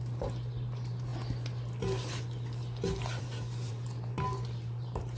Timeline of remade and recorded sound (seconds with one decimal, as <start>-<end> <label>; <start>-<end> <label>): 0.0-1.1 remade; 1.1-3.2 recorded; 3.2-5.2 remade